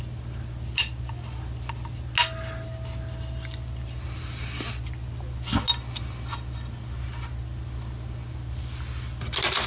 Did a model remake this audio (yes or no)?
no